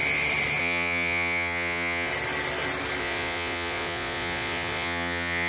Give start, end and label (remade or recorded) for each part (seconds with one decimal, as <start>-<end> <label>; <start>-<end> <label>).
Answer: 0.0-0.6 recorded; 0.6-2.1 remade; 2.1-3.0 recorded; 3.0-5.5 remade